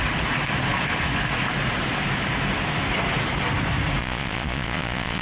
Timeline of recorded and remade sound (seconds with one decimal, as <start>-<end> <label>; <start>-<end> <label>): 0.0-4.0 recorded; 4.0-5.2 remade

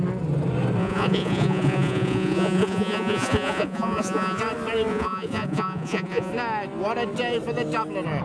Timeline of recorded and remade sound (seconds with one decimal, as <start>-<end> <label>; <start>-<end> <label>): 0.0-0.8 recorded; 0.8-4.4 remade; 4.4-4.9 recorded; 4.9-6.3 remade; 6.3-8.2 recorded

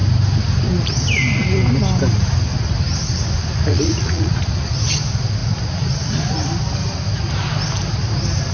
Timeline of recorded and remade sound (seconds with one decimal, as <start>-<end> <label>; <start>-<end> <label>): 0.0-3.7 recorded; 3.7-4.4 remade; 4.4-8.5 recorded

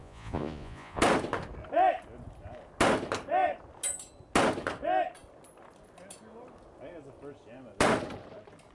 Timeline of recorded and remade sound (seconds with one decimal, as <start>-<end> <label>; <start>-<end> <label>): 0.0-1.0 remade; 1.0-8.7 recorded